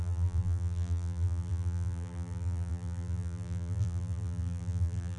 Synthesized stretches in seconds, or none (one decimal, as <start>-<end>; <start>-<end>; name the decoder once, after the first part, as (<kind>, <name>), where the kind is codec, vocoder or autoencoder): 0.0-5.2 (vocoder, BigVGAN v2)